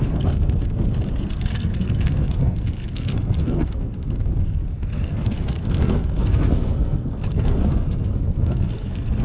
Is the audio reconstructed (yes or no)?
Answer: yes